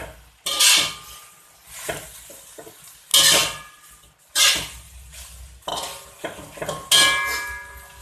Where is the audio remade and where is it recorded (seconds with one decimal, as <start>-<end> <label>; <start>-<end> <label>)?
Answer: 0.0-8.0 recorded